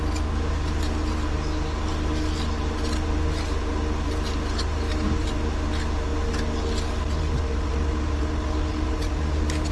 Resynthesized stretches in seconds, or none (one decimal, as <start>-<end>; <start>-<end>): none